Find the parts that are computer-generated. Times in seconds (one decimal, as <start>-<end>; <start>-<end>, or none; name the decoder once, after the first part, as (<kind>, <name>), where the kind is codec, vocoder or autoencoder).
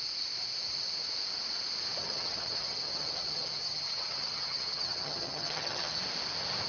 2.0-6.0 (vocoder, HiFi-GAN)